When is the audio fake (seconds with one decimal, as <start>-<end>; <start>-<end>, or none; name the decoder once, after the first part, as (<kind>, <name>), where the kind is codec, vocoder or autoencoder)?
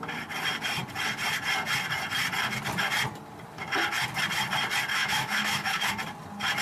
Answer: 4.9-5.9 (autoencoder, DAC-VAE)